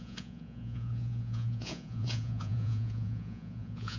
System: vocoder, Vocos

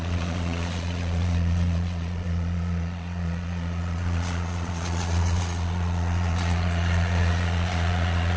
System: vocoder, Vocos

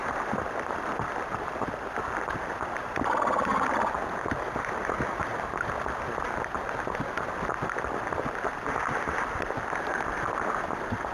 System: none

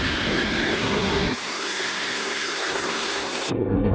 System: codec, SNAC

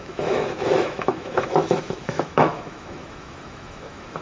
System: autoencoder, DAC-VAE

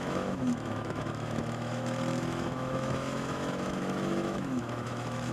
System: autoencoder, DAC-VAE